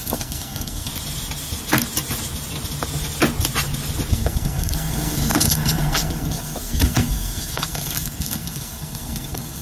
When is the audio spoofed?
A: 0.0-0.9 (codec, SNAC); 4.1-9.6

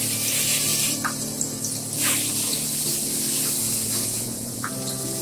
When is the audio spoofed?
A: 4.0-4.7 (vocoder, Vocos)